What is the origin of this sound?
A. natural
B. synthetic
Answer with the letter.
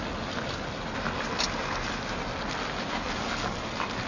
A